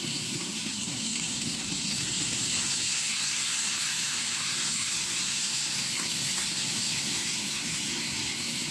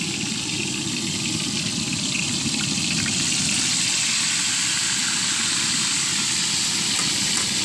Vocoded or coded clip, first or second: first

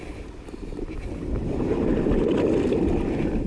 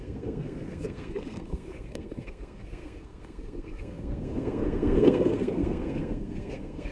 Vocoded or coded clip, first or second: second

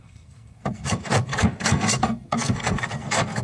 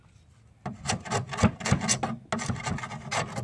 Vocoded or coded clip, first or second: first